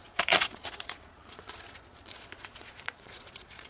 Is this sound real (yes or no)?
no